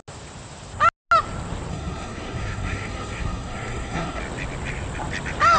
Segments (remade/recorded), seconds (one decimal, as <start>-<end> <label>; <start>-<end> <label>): 0.0-1.7 recorded; 1.7-4.2 remade; 4.2-5.6 recorded